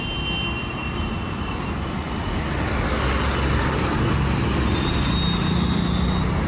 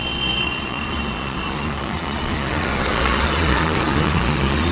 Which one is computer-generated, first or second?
second